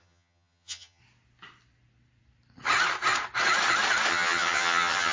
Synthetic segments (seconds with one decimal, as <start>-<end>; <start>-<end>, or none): 0.0-1.0; 4.1-5.1